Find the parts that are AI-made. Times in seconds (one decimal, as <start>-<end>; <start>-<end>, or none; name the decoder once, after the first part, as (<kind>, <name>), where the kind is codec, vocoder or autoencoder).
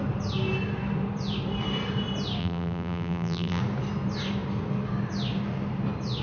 2.4-3.6 (vocoder, BigVGAN v2)